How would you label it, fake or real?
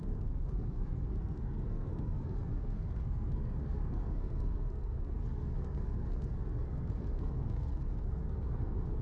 fake